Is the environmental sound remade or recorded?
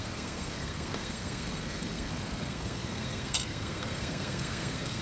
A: remade